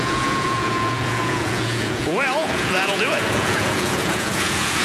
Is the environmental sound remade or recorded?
remade